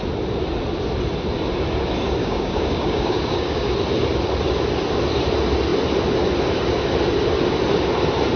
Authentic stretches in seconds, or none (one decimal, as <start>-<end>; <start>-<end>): 0.0-2.2; 3.7-8.4